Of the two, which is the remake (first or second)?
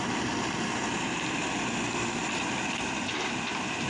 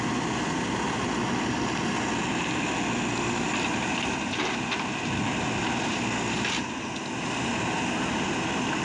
first